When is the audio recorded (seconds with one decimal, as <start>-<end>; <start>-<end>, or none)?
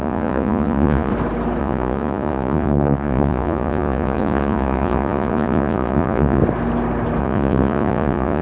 1.1-1.6; 6.4-7.2